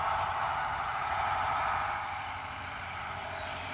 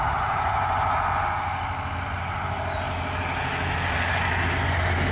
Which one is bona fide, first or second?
second